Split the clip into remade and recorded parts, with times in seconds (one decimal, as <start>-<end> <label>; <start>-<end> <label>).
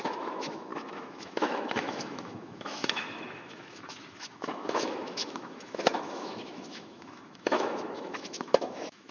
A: 0.0-9.1 remade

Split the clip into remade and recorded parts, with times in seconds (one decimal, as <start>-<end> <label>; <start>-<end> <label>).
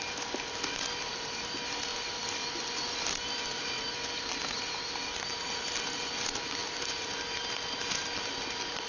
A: 0.0-8.9 recorded